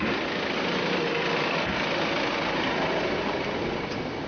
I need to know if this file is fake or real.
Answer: real